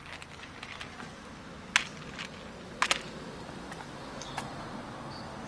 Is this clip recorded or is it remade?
recorded